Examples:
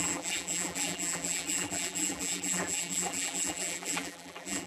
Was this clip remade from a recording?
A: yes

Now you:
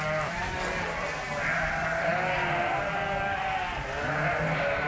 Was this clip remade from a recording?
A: no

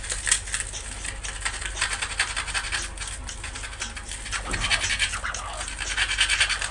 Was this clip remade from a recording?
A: no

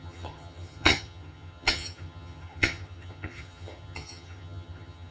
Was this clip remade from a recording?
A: yes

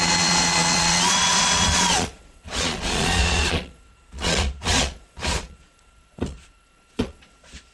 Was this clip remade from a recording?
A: yes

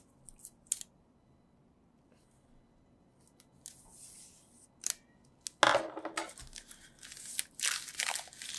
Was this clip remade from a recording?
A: no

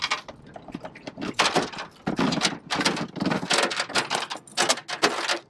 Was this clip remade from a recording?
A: no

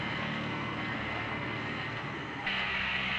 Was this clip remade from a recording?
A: yes